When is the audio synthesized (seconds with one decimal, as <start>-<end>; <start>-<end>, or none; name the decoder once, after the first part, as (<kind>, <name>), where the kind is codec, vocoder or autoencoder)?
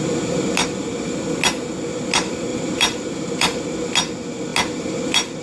2.5-3.6 (vocoder, BigVGAN v2)